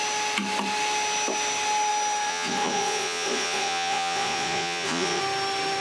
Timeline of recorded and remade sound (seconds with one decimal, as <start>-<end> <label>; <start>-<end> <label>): 0.0-2.3 recorded; 2.3-5.2 remade; 5.2-5.8 recorded